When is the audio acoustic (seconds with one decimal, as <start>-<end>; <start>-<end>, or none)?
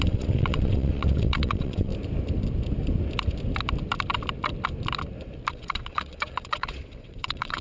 1.9-5.5